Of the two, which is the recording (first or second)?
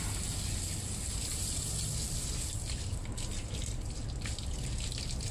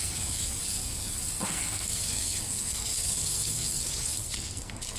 first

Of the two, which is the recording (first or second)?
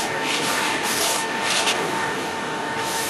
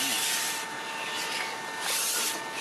second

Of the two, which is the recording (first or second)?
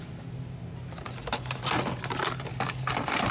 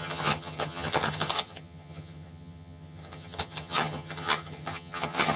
first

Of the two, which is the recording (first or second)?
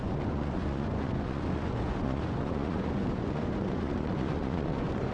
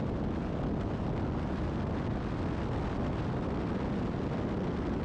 second